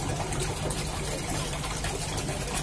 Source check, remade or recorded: recorded